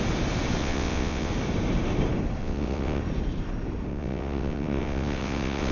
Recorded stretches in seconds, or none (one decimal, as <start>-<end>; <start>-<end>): 0.0-0.6; 1.3-2.4; 3.0-3.9